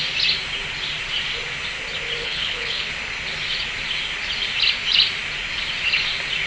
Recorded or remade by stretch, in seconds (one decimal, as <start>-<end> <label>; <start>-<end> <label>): 0.0-2.2 recorded; 2.2-2.9 remade; 2.9-6.5 recorded

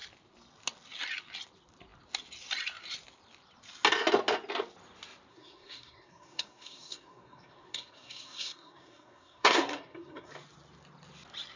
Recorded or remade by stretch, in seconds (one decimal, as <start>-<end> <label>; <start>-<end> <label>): 0.0-5.3 recorded; 5.3-10.3 remade; 10.3-11.6 recorded